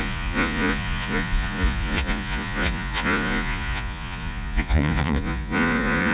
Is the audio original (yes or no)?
no